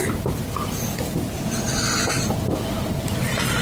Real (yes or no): yes